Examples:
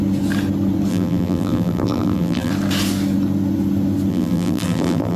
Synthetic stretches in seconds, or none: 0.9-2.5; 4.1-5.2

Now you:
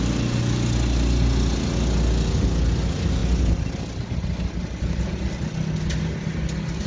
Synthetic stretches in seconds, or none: none